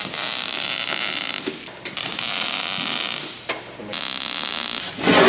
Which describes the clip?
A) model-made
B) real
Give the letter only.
B